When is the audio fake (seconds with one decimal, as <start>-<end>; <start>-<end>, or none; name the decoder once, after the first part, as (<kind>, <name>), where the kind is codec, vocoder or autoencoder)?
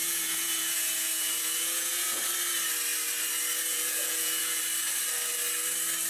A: 0.0-2.2 (vocoder, Vocos); 3.7-4.6